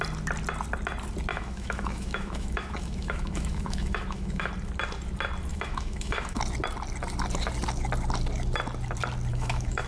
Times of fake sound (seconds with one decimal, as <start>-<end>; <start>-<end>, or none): 1.3-4.5; 5.5-6.4; 9.3-9.9